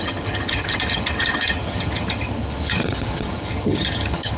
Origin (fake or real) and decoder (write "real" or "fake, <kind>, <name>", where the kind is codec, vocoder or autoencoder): fake, vocoder, HiFi-GAN